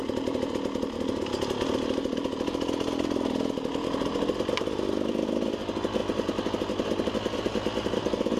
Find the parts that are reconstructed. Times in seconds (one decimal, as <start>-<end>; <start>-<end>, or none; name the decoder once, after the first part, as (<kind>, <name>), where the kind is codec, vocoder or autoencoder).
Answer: none